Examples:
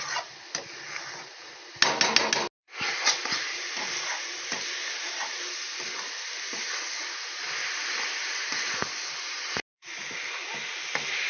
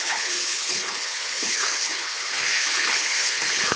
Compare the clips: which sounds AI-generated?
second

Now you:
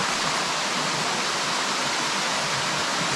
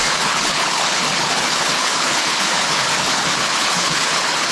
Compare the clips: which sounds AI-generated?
second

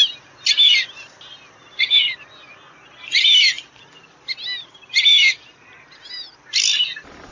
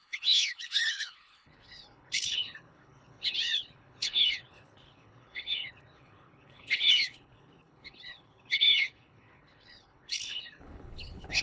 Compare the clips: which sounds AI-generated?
second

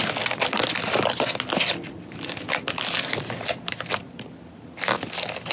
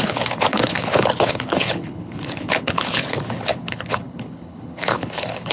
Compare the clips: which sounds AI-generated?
second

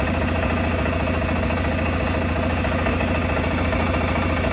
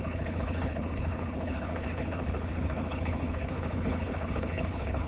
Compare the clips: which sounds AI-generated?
second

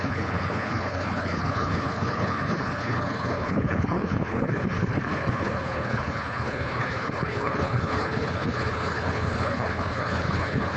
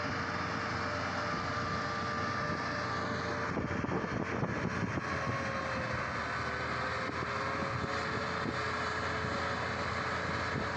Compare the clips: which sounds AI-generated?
first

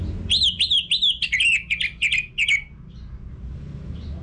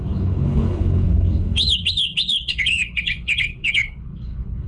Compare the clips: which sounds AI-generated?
second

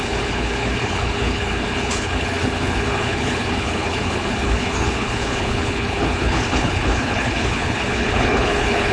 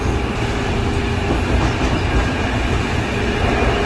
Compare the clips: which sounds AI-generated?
first